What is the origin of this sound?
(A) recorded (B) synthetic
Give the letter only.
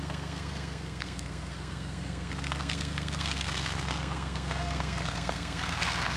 B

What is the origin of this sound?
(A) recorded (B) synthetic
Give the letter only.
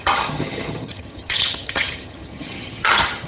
B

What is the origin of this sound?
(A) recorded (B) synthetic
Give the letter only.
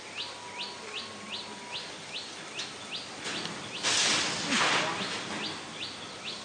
A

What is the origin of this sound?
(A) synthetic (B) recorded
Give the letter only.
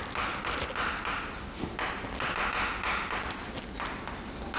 B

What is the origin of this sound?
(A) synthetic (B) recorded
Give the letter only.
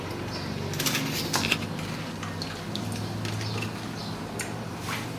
B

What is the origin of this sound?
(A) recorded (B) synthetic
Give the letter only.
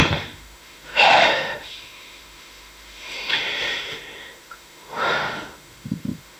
B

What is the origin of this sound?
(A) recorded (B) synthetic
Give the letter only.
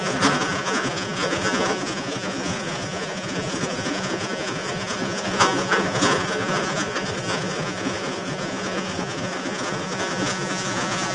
B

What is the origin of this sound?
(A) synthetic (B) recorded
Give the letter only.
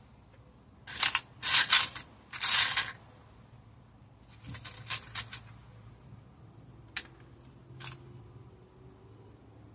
B